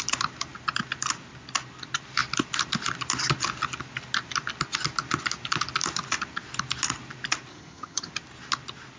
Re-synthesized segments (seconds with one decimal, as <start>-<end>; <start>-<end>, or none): 7.5-8.1